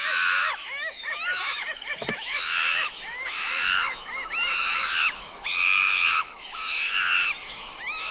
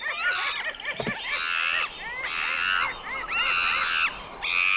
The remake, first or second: first